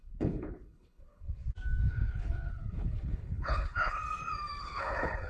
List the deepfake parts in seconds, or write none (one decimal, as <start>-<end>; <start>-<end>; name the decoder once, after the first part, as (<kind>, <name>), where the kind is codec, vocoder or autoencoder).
0.0-1.4 (codec, HILCodec); 1.9-4.0; 4.6-5.3